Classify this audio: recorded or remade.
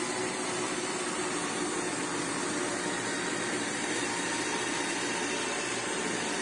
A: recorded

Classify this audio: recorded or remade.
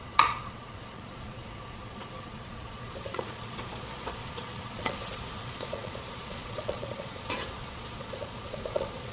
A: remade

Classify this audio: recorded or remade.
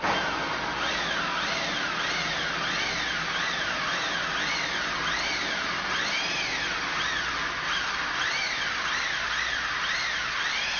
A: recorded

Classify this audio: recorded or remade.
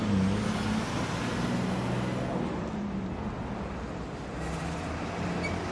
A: recorded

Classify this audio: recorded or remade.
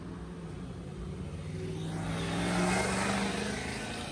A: recorded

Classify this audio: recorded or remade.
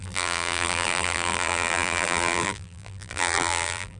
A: remade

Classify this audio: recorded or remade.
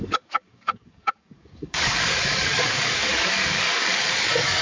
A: remade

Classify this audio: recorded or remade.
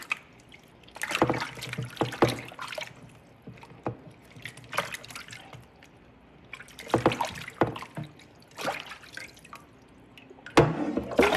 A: recorded